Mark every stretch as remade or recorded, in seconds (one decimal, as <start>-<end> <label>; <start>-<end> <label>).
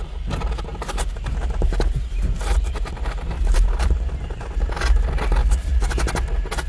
0.0-0.7 recorded; 0.7-4.7 remade; 4.7-5.4 recorded; 5.4-5.9 remade; 5.9-6.7 recorded